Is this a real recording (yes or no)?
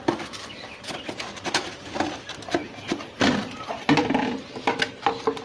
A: yes